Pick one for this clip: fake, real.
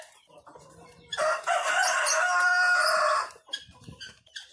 fake